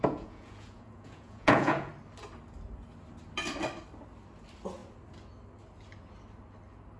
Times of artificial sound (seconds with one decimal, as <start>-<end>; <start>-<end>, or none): 0.0-1.9